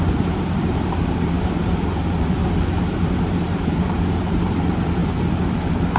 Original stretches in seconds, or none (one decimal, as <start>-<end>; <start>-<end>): 2.4-3.1